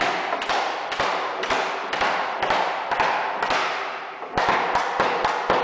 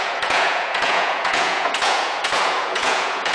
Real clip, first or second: first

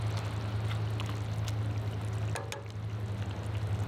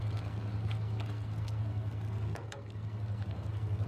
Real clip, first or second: first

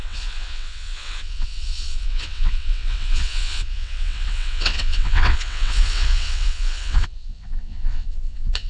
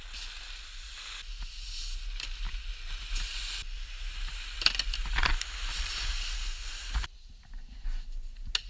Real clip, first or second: second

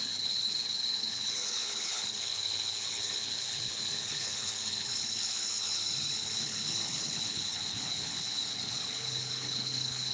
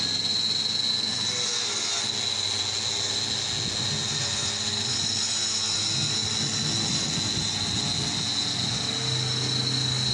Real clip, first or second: second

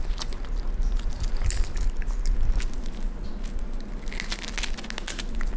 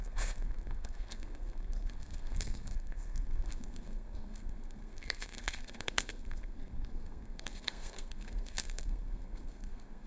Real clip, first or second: first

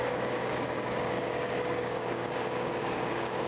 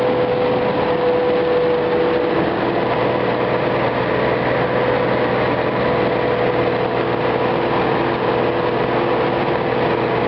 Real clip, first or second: second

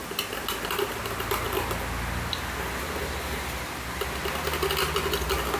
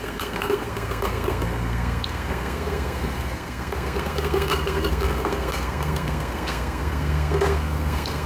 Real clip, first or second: first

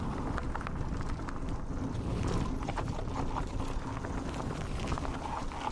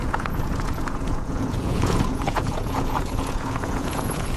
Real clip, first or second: first